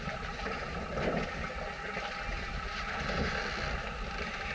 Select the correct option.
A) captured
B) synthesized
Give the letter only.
A